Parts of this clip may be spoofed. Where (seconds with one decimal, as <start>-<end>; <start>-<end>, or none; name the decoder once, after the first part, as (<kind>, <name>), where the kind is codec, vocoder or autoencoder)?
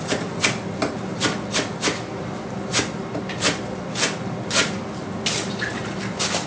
none